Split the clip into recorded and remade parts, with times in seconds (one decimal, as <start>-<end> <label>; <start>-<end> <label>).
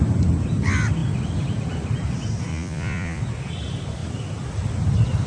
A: 0.0-2.5 recorded; 2.5-3.2 remade; 3.2-5.3 recorded